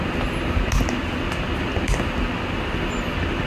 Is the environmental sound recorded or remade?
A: recorded